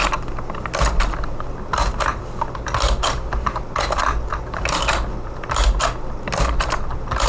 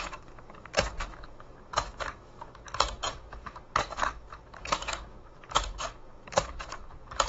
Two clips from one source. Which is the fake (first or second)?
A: second